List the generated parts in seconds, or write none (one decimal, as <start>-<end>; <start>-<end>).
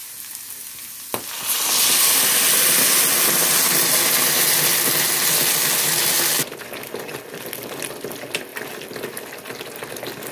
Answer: none